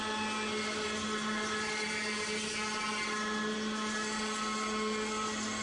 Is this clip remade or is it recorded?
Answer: recorded